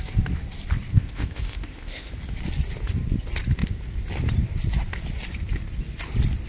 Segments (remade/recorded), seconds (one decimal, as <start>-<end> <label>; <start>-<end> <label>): 0.0-0.9 recorded; 0.9-2.1 remade; 2.1-6.5 recorded